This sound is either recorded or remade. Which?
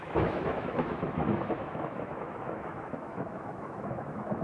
remade